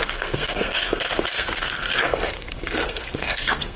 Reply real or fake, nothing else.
fake